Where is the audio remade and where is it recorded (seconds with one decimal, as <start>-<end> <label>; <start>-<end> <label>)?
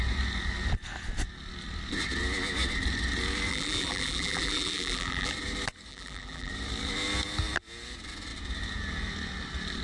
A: 0.0-3.5 recorded; 3.5-5.3 remade; 5.3-5.9 recorded; 5.9-6.5 remade; 6.5-9.8 recorded